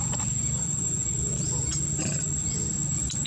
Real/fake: real